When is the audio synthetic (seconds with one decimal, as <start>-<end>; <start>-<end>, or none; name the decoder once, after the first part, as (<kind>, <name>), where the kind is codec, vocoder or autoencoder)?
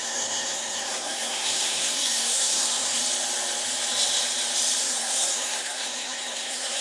0.0-3.0 (codec, SNAC); 4.8-6.8